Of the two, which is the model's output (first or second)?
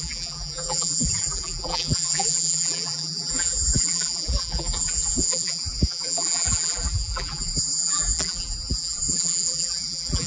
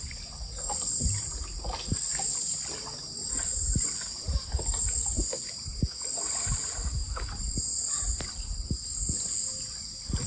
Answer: first